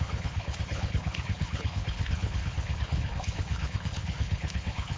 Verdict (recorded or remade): remade